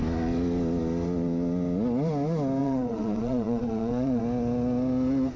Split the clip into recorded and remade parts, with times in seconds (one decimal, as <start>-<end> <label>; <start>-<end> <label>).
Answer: 0.0-2.6 recorded; 2.6-4.2 remade; 4.2-5.4 recorded